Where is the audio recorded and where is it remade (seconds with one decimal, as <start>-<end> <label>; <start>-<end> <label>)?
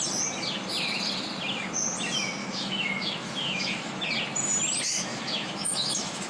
0.0-2.4 recorded; 2.4-4.1 remade; 4.1-5.1 recorded; 5.1-6.3 remade